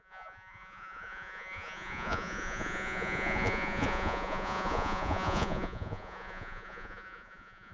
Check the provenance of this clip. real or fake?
fake